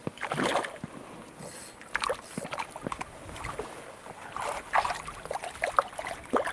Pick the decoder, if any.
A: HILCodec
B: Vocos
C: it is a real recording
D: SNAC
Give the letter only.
C